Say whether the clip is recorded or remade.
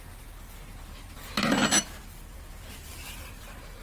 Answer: recorded